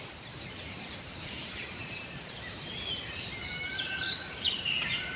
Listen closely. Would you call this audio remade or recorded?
remade